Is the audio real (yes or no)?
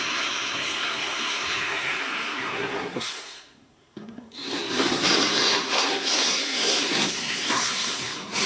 no